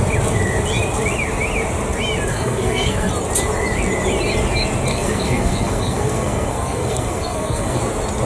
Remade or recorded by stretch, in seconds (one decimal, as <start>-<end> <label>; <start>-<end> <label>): 0.0-2.3 recorded; 2.3-3.1 remade; 3.1-4.9 recorded; 4.9-7.8 remade; 7.8-8.3 recorded